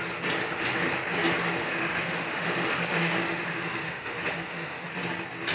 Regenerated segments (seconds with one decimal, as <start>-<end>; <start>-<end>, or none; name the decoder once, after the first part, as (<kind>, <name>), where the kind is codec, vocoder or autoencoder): 0.4-0.9 (autoencoder, DAC-VAE); 1.6-4.9